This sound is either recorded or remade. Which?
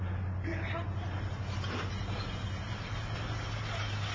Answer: recorded